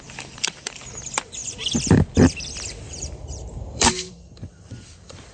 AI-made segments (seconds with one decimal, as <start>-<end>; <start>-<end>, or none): 0.0-5.3